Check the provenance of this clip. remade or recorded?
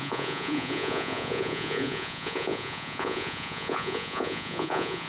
remade